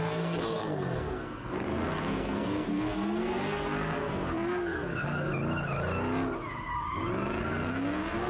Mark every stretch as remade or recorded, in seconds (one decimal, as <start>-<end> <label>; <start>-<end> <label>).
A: 0.0-5.3 remade; 5.3-7.4 recorded; 7.4-8.3 remade

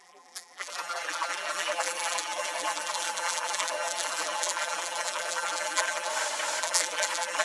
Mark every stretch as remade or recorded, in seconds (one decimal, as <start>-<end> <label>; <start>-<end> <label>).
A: 0.0-6.1 remade; 6.1-6.6 recorded; 6.6-7.4 remade